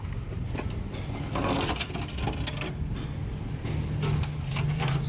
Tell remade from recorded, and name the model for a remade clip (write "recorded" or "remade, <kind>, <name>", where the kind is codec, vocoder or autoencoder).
recorded